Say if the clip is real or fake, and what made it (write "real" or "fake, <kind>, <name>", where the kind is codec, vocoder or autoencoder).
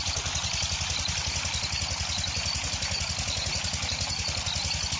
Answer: real